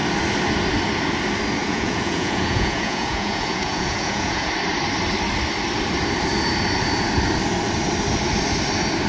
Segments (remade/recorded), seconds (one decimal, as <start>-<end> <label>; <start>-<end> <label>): 0.0-1.6 recorded; 1.6-4.5 remade; 4.5-9.1 recorded